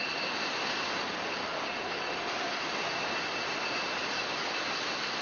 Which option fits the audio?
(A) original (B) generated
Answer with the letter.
A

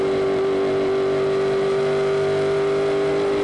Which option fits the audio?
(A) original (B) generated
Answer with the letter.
A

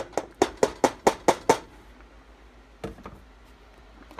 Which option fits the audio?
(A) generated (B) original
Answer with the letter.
B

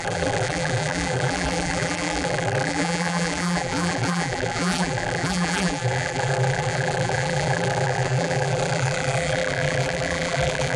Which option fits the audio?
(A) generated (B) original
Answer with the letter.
A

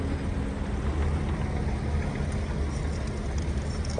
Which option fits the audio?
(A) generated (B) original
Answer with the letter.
B